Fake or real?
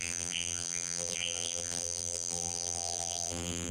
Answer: fake